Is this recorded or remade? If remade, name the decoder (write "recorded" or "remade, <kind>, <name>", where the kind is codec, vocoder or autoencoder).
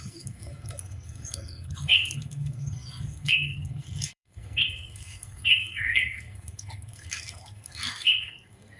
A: remade, codec, SNAC